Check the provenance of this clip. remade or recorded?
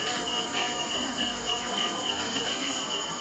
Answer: remade